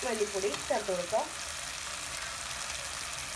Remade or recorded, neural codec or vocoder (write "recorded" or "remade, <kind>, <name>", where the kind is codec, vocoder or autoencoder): recorded